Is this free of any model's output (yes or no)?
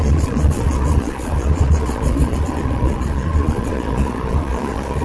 no